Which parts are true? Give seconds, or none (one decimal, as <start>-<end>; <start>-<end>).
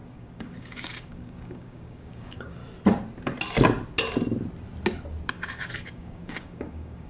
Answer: 2.6-5.3